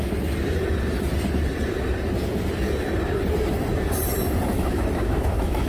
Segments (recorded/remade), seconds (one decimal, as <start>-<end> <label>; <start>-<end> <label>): 0.0-4.5 recorded; 4.5-5.7 remade